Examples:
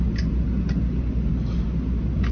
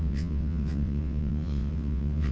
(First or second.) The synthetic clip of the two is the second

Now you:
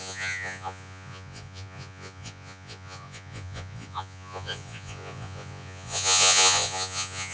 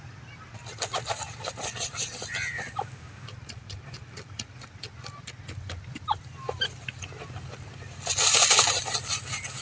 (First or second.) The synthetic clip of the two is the first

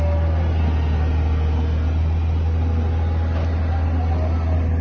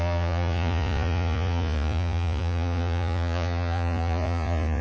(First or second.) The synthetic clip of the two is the second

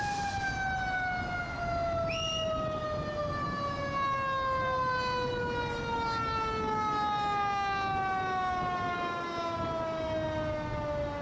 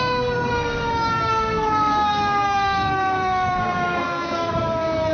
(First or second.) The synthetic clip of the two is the second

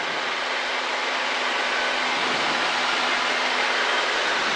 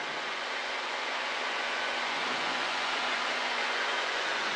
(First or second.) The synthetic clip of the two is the second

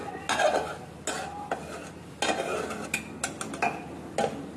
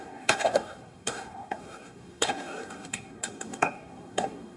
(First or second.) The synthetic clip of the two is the second